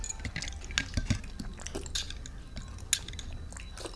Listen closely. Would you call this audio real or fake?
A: real